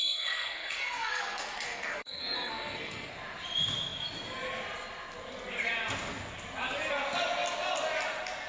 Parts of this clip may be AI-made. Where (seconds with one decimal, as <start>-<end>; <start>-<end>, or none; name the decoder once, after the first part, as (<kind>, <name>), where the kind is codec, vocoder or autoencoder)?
0.0-3.1 (codec, SNAC)